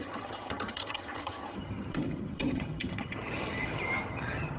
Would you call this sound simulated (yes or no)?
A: yes